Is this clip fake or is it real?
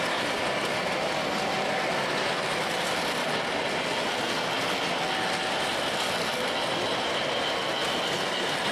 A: real